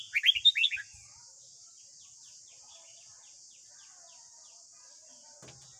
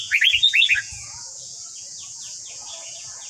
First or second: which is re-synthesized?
second